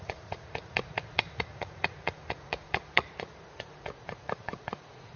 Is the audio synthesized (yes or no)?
yes